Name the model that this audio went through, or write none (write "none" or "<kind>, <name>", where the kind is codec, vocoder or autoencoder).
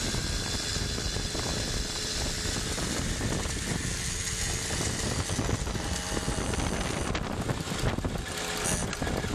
none